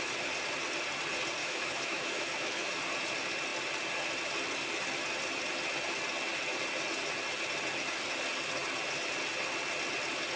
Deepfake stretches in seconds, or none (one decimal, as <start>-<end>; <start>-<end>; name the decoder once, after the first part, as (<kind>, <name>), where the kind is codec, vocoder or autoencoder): 1.4-2.8 (autoencoder, DAC-VAE)

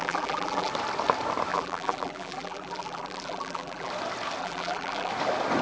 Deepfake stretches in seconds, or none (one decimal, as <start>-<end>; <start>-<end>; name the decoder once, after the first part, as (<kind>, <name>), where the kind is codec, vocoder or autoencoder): 0.0-0.7 (vocoder, BigVGAN v2); 1.5-3.9; 4.4-5.1

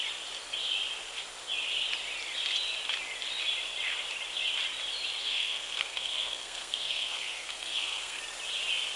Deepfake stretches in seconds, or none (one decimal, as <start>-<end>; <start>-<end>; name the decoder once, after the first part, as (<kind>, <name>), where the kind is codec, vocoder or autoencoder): 5.2-8.2 (codec, SNAC)

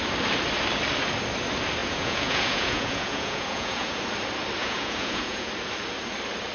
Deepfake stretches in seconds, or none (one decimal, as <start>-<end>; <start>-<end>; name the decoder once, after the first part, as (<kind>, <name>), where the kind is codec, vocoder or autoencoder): 1.8-4.0 (vocoder, Vocos); 4.6-5.5

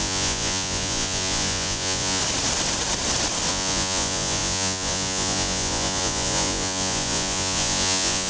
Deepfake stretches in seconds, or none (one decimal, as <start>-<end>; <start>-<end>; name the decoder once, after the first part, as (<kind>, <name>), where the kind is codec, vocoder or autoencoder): 0.0-2.2 (vocoder, Vocos); 3.5-8.3